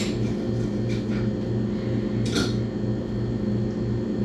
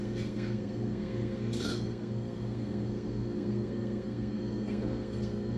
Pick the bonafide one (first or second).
first